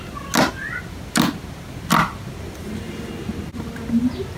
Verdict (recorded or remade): recorded